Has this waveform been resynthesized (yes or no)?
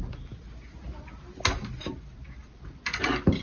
no